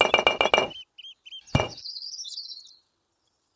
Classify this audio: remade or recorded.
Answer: recorded